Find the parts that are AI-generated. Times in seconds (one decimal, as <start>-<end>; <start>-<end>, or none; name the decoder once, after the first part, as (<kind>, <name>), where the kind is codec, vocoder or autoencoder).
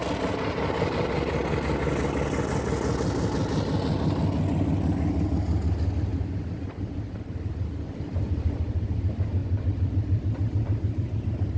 6.1-8.9 (vocoder, BigVGAN v2); 9.4-11.6